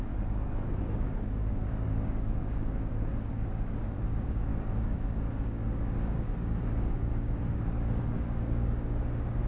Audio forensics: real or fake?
fake